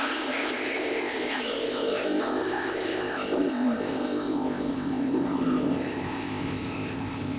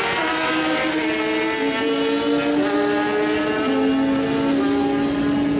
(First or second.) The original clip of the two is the second